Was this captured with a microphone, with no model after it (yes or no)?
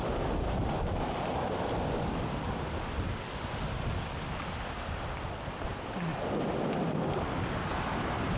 yes